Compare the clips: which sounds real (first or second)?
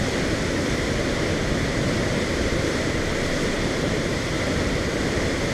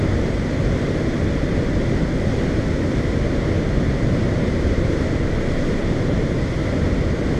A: second